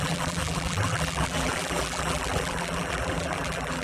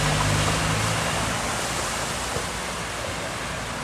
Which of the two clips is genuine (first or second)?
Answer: second